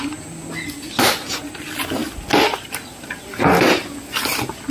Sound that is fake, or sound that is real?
real